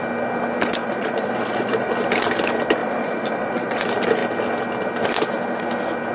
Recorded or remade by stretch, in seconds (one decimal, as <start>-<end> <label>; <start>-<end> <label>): 0.0-0.8 recorded; 0.8-1.9 remade; 1.9-2.8 recorded; 2.8-3.8 remade; 3.8-6.1 recorded